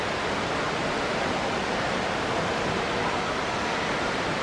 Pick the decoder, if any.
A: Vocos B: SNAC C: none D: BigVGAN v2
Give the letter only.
D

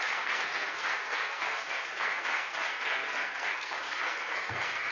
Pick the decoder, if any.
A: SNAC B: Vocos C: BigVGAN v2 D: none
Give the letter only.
A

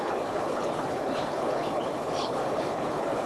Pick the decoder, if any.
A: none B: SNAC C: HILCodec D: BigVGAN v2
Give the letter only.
C